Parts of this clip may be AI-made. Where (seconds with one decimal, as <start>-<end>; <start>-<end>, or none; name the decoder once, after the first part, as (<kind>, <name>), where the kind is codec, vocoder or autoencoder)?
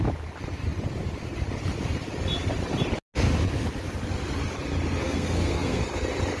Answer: 5.0-5.8 (codec, SNAC)